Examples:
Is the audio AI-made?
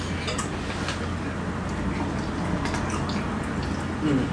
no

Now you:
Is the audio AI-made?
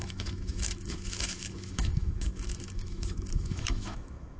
yes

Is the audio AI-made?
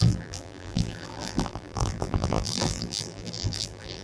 yes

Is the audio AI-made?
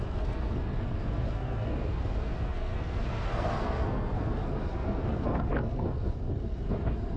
yes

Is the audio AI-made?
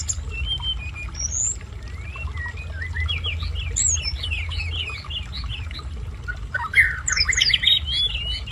no